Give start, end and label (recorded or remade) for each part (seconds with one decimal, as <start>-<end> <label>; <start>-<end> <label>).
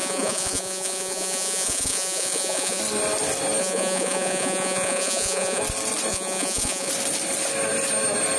0.0-2.8 remade; 2.8-3.6 recorded; 3.6-5.6 remade; 5.6-6.1 recorded; 6.1-6.9 remade; 6.9-8.4 recorded